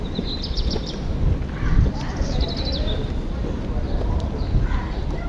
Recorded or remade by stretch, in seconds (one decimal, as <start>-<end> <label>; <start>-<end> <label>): 0.0-5.3 recorded